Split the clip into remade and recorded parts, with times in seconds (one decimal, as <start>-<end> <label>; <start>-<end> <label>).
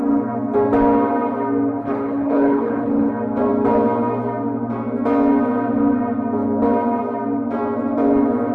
0.0-1.8 recorded; 1.8-3.1 remade; 3.1-8.5 recorded